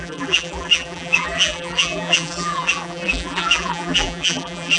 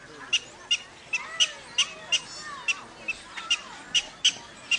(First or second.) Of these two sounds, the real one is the second